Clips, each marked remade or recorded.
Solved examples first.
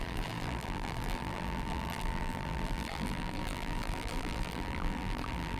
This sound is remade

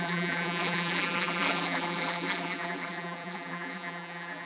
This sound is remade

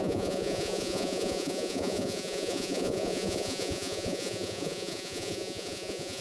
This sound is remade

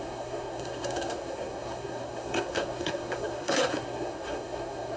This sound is remade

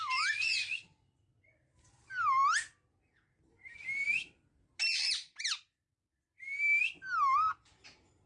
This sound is recorded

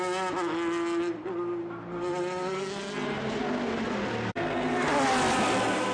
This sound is recorded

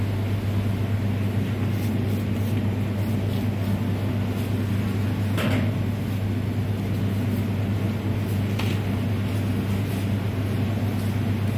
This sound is recorded